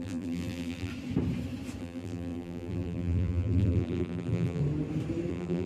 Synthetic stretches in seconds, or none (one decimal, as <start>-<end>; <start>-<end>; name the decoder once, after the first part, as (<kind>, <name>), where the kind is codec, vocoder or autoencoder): 0.0-0.9 (vocoder, BigVGAN v2); 1.8-4.6; 5.3-5.7